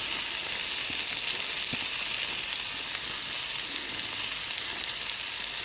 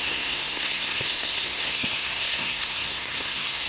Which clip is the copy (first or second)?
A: second